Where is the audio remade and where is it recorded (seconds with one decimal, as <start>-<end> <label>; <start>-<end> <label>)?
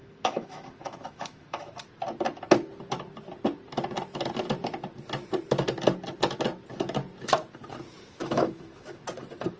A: 0.0-1.7 remade; 1.7-8.2 recorded; 8.2-9.0 remade; 9.0-9.6 recorded